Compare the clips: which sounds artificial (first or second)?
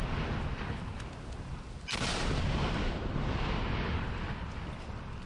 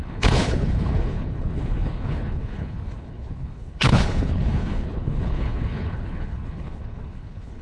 second